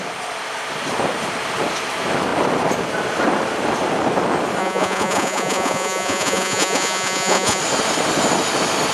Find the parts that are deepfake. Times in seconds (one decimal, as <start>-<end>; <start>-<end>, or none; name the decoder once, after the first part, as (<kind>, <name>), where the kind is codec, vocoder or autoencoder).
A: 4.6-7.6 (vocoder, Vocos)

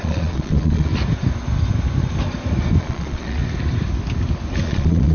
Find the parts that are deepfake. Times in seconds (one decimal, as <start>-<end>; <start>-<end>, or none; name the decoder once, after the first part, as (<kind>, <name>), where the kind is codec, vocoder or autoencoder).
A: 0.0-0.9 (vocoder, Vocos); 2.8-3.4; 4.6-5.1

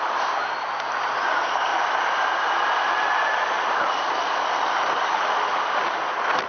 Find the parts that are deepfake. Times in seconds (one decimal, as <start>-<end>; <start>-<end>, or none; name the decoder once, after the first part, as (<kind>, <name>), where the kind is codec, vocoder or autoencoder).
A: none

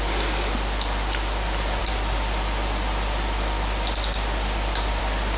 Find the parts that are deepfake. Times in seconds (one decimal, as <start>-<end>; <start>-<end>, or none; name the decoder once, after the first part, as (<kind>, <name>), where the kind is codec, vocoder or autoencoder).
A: none